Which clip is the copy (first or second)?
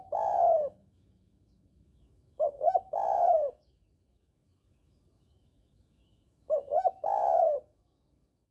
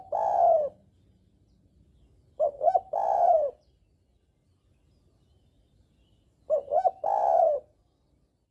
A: first